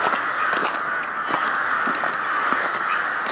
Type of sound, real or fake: real